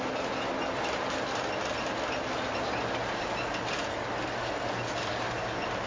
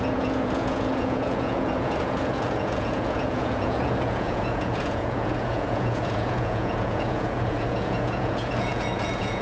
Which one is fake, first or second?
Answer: second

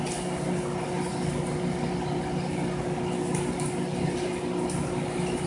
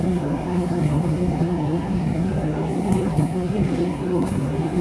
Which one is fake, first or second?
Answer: second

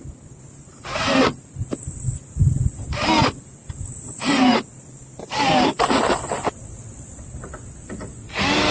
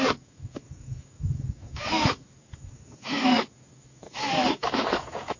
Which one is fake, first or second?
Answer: second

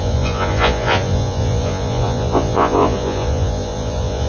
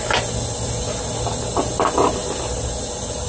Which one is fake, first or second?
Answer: first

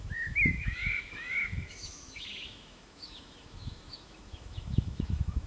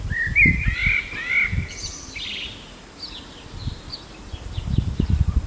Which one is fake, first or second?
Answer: first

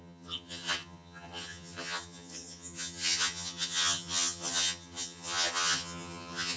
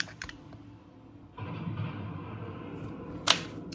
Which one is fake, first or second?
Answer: first